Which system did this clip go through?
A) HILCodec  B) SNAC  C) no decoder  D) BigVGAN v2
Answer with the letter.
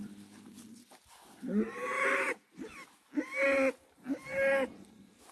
C